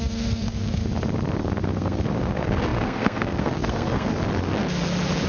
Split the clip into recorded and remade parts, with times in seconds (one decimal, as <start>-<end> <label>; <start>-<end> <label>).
0.0-0.8 remade; 0.8-1.4 recorded; 1.4-4.1 remade; 4.1-5.3 recorded